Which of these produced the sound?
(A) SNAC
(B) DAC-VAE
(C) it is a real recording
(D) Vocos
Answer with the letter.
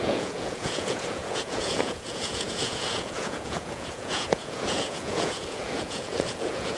D